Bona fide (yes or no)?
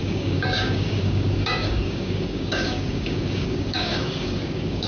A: no